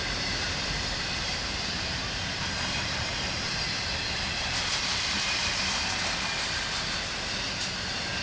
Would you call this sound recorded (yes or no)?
no